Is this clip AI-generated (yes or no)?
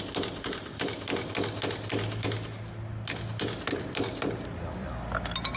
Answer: no